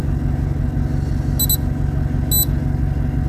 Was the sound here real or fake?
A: real